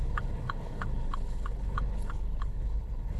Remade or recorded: remade